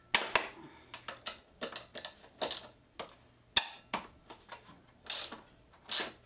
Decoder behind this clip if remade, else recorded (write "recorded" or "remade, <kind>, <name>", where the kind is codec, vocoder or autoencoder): recorded